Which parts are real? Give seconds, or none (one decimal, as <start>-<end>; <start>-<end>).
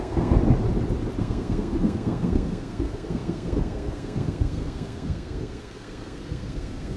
0.4-1.2